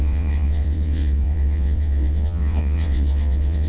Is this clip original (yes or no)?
no